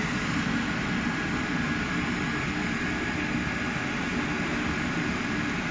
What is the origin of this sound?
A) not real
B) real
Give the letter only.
B